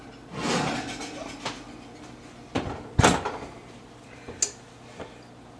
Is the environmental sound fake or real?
real